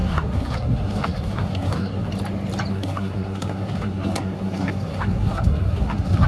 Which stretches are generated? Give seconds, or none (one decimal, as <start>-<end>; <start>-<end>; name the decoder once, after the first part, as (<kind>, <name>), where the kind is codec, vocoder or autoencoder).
0.0-2.1 (codec, SNAC); 2.7-6.3